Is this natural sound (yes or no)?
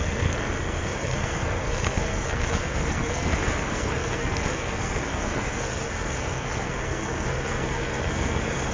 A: no